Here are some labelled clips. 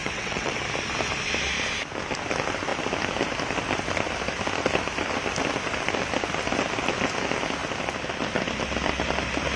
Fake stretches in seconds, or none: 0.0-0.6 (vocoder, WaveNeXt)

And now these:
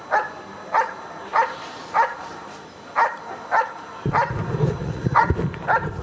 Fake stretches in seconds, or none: 4.8-5.3 (vocoder, Vocos)

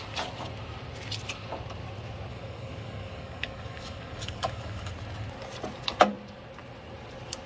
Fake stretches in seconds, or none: 2.3-4.9 (codec, DAC)

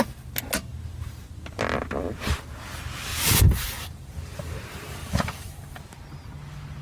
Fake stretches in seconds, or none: 3.1-4.6 (vocoder, BigVGAN v2); 5.0-5.8

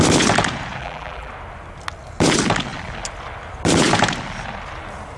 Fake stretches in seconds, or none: 0.8-1.3 (vocoder, BigVGAN v2)

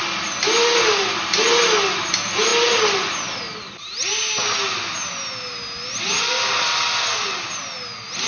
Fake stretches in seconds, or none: none

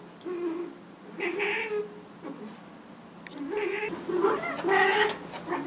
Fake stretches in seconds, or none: none

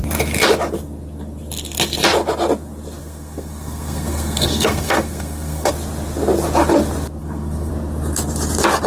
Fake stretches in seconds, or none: 3.0-5.7 (codec, SNAC); 7.2-7.7